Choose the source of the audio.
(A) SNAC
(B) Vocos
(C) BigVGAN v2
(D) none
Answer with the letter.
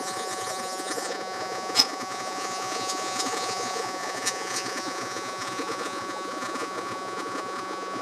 B